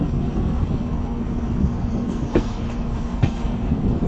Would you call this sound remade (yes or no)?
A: yes